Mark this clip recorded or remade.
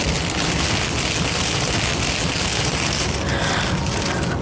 recorded